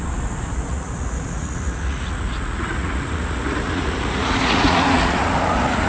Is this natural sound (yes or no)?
no